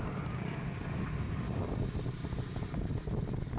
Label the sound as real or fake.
real